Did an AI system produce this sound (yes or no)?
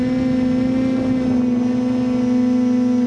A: no